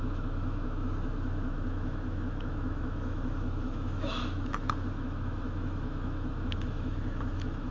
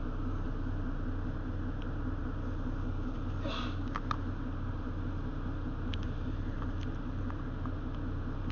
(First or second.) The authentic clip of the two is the second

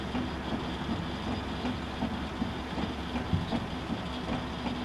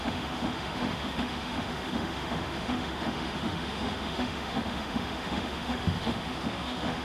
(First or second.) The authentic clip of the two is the first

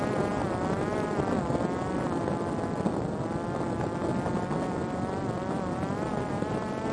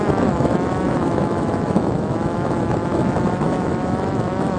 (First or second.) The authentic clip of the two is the first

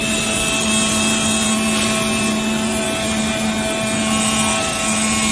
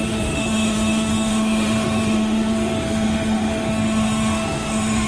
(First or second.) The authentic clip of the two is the first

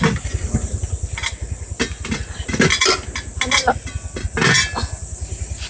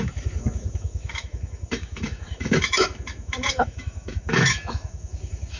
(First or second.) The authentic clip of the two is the first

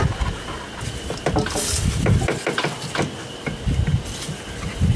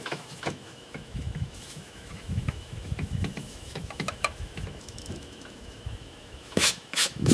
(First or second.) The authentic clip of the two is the first